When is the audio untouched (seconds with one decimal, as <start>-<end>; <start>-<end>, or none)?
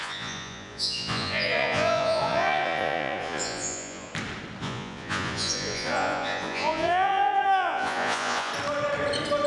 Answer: 4.1-4.6; 8.5-9.5